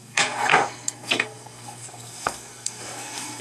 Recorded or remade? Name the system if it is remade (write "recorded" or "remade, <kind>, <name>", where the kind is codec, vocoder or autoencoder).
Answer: remade, codec, SNAC